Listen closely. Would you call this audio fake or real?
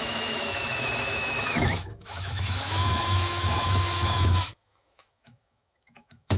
fake